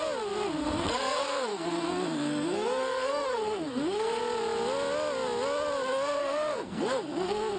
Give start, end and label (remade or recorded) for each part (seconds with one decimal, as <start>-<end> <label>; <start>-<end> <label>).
0.0-0.6 recorded; 0.6-4.2 remade; 4.2-6.2 recorded; 6.2-7.6 remade